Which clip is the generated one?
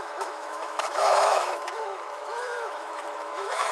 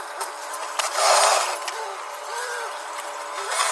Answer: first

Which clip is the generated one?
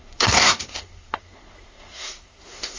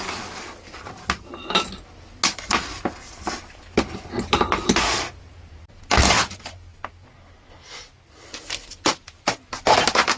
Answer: first